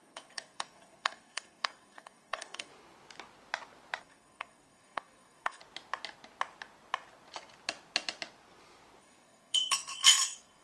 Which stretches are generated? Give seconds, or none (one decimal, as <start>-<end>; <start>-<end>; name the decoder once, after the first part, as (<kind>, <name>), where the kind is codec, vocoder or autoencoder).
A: 0.0-2.7 (codec, SNAC); 4.0-5.6; 9.0-10.6